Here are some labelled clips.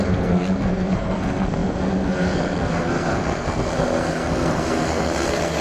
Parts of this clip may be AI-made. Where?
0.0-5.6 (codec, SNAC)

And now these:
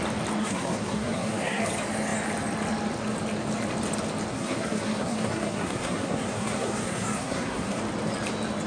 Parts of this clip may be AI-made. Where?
0.4-1.6 (codec, SNAC); 4.3-7.8

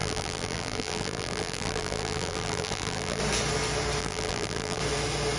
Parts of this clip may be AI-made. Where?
0.0-3.2 (vocoder, BigVGAN v2); 4.0-4.8

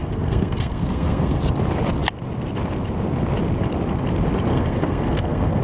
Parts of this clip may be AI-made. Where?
0.0-1.4 (codec, SNAC); 4.5-5.6

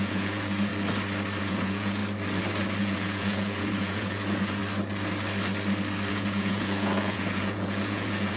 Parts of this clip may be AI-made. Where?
0.0-0.7 (vocoder, Vocos); 1.4-2.0; 2.8-4.6; 6.1-8.4

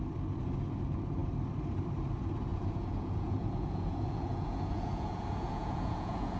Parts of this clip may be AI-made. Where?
2.5-6.4 (vocoder, Vocos)

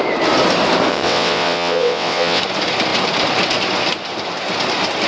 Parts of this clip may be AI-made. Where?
0.9-2.4 (vocoder, WaveNeXt)